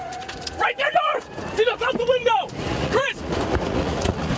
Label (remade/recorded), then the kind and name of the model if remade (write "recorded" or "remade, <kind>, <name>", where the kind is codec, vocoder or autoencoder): remade, vocoder, Vocos